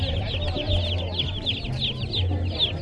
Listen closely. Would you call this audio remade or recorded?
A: recorded